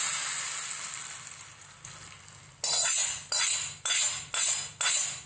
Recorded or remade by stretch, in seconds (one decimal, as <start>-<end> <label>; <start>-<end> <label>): 0.0-5.3 recorded